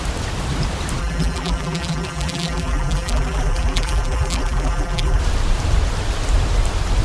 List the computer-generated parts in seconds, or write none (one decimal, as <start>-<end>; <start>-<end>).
1.0-5.2